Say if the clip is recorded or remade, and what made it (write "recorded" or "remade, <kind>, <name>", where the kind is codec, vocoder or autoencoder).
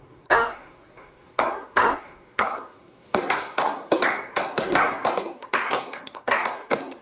remade, codec, SNAC